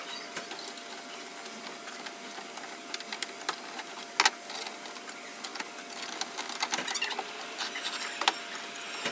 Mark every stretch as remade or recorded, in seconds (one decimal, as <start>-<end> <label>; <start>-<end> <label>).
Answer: 0.0-9.1 recorded